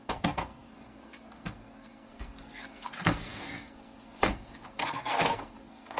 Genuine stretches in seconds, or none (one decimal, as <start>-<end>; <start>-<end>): none